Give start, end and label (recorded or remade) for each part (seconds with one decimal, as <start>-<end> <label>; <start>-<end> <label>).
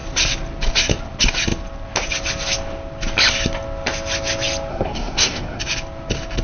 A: 0.0-4.7 recorded; 4.7-5.6 remade; 5.6-6.4 recorded